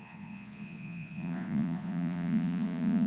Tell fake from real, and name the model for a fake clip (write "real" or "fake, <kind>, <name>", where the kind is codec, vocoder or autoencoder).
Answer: fake, vocoder, Vocos